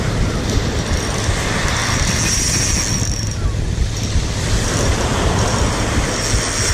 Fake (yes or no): no